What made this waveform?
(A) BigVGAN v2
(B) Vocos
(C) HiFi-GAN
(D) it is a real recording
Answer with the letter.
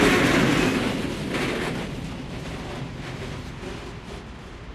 D